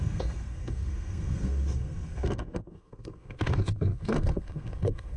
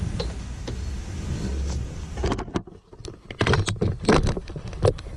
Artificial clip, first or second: first